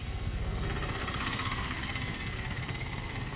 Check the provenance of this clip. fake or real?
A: fake